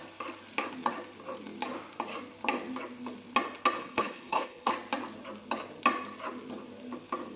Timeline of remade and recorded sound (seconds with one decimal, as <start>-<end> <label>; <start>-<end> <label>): 0.0-3.8 recorded; 3.8-4.7 remade; 4.7-7.4 recorded